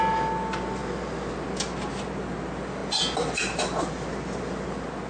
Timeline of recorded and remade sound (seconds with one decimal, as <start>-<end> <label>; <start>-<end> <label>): 0.0-5.1 recorded

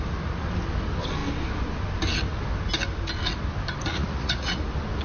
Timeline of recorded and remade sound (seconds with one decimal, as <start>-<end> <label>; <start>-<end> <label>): 0.0-3.9 recorded; 3.9-4.6 remade; 4.6-5.0 recorded

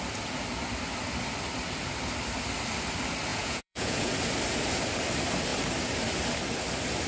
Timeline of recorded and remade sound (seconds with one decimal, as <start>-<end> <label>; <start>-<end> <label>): 0.0-3.3 recorded; 3.3-4.1 remade; 4.1-7.1 recorded

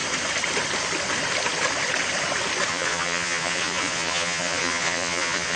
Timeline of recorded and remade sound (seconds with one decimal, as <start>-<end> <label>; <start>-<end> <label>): 0.0-2.7 recorded; 2.7-5.6 remade

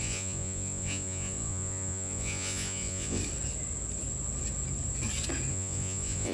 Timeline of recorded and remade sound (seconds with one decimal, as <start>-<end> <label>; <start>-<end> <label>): 0.0-3.2 remade; 3.2-5.5 recorded; 5.5-6.3 remade

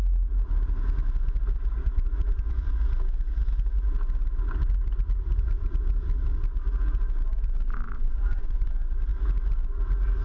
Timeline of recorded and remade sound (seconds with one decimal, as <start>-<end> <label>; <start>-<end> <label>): 0.0-1.8 recorded; 1.8-2.7 remade; 2.7-7.7 recorded; 7.7-8.7 remade; 8.7-10.2 recorded

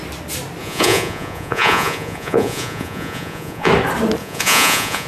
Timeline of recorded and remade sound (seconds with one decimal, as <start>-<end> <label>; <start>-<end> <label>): 0.0-0.6 recorded; 0.6-3.7 remade; 3.7-4.2 recorded; 4.2-5.1 remade